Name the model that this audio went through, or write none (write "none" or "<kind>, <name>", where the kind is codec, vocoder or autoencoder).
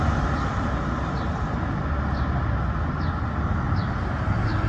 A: none